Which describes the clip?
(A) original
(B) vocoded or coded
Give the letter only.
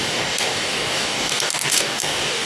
B